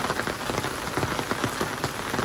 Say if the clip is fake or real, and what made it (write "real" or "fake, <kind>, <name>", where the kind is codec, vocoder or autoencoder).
real